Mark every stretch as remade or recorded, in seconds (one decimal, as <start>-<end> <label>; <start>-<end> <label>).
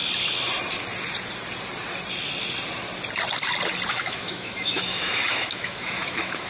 0.0-3.9 recorded; 3.9-6.5 remade